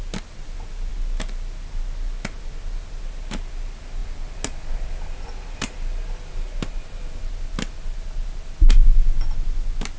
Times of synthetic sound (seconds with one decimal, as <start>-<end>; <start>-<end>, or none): none